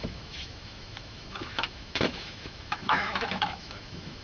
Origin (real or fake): fake